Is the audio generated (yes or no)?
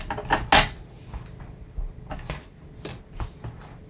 no